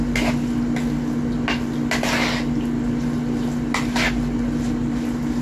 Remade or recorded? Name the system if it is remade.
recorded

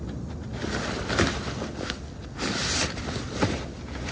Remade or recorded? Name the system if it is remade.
recorded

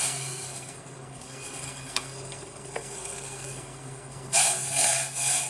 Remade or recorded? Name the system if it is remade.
remade, codec, SNAC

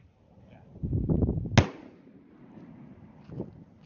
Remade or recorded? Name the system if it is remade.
recorded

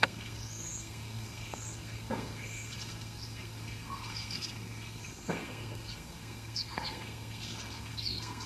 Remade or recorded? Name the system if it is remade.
remade, codec, SNAC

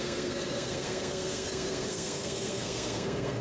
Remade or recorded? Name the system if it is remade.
remade, codec, SNAC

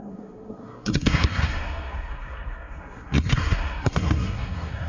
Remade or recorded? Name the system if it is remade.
remade, codec, SNAC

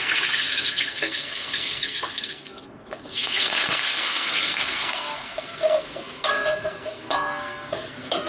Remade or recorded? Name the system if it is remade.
remade, codec, SNAC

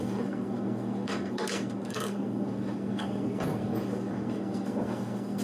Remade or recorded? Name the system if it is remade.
remade, codec, SNAC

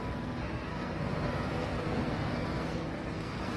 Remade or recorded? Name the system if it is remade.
remade, codec, SNAC